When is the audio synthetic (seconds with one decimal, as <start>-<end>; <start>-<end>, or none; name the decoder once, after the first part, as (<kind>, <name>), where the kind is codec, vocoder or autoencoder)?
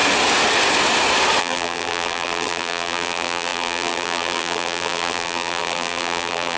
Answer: 1.4-6.6 (vocoder, BigVGAN v2)